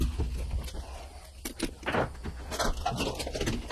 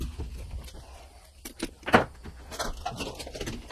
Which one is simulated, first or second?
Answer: second